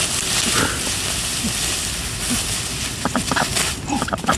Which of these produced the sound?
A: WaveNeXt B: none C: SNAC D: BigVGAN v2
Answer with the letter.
B